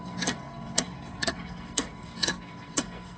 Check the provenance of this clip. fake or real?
fake